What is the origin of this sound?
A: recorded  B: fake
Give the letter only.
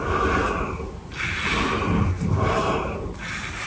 A